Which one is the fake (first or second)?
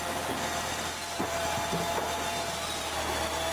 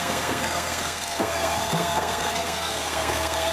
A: second